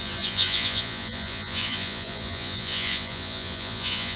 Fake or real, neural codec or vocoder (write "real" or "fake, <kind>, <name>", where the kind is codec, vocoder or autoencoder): fake, vocoder, Vocos